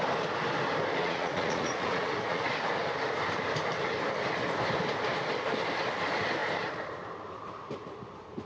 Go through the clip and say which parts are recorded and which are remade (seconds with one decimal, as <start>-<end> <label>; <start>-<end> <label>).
0.0-1.0 recorded; 1.0-2.5 remade; 2.5-8.5 recorded